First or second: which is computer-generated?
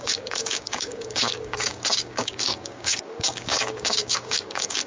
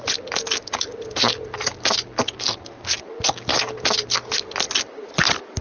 first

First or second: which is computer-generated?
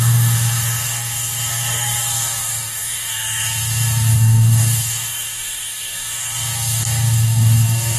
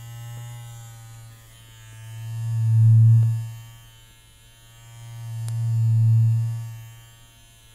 first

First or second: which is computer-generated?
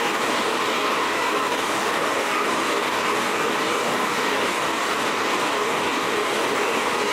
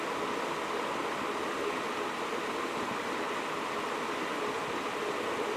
first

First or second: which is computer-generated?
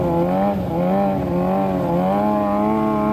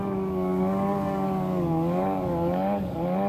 second